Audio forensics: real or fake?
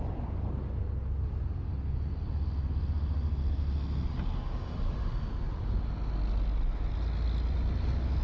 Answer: real